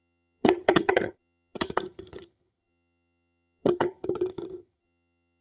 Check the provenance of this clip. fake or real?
fake